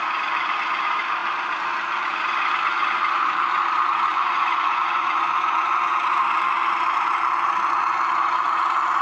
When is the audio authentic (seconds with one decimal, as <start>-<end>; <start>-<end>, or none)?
0.0-4.1; 5.9-9.0